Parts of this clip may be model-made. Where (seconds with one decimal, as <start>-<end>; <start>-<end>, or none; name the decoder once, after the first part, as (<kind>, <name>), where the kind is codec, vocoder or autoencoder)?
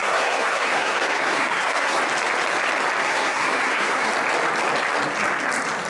0.0-2.0 (codec, SNAC); 3.0-4.1